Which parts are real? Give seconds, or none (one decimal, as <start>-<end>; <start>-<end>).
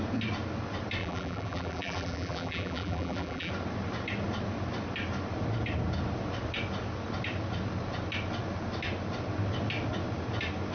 0.0-1.0; 3.5-10.7